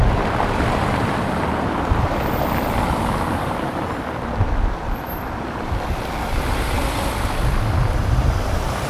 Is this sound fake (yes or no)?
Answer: yes